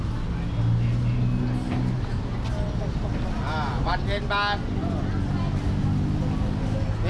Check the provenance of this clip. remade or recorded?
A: recorded